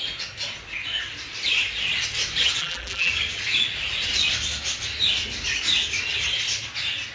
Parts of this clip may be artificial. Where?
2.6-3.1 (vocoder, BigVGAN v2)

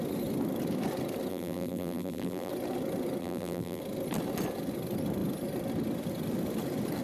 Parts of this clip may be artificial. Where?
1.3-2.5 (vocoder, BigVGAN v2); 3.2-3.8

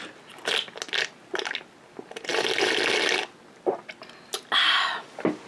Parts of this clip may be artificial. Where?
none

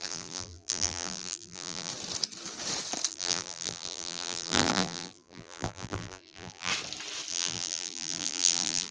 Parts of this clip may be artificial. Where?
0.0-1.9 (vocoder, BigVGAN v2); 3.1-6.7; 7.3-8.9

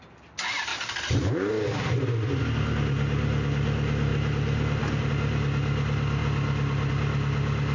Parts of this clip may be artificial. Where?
0.7-1.5 (vocoder, BigVGAN v2); 4.1-5.1